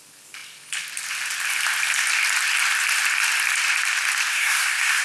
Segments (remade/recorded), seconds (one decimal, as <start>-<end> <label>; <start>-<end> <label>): 0.0-4.3 recorded; 4.3-5.0 remade